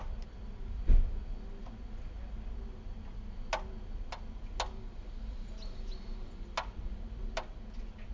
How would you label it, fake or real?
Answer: real